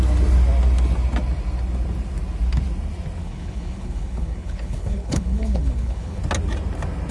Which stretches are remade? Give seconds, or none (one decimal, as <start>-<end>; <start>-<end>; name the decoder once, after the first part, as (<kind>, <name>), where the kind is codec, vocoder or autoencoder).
3.2-6.2 (codec, HILCodec)